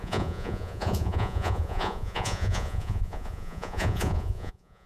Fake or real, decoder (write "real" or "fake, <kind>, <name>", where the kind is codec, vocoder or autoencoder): fake, vocoder, Vocos